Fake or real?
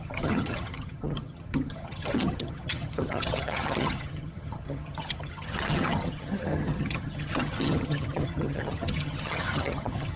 fake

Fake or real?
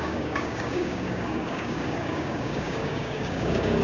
fake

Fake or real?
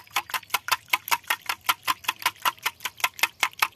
real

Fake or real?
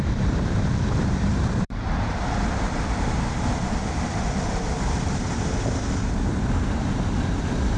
fake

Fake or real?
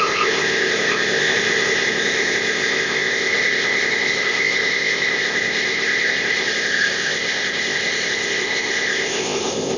fake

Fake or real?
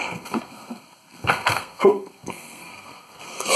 fake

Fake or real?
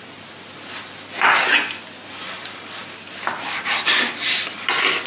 real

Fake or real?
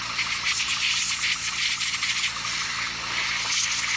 real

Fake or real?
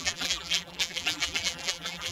fake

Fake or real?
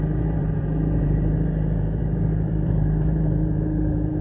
fake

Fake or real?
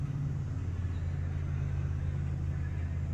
real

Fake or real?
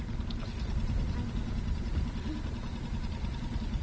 real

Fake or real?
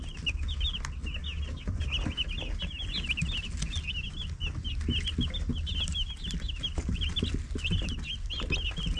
real